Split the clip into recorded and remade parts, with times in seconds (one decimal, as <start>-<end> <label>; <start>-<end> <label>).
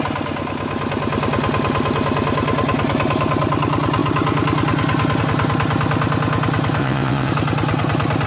0.0-6.8 recorded; 6.8-7.3 remade; 7.3-8.3 recorded